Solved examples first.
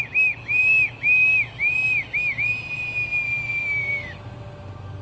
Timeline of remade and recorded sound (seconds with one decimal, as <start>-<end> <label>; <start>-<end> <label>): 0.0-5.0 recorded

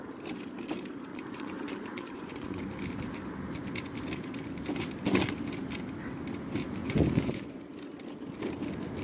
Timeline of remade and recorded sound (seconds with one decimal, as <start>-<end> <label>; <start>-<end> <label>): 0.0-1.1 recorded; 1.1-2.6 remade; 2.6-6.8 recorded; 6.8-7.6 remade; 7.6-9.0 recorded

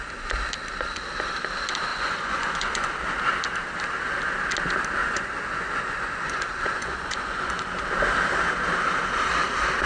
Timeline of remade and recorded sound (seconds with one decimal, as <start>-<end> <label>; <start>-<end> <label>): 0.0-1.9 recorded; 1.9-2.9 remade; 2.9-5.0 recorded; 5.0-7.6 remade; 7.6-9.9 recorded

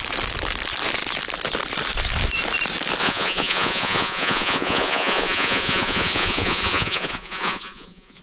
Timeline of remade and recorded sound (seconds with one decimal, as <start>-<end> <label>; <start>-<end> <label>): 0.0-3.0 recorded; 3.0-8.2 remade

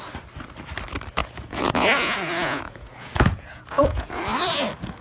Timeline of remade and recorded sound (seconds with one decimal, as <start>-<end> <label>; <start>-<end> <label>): 0.0-1.2 recorded; 1.2-4.2 remade; 4.2-5.0 recorded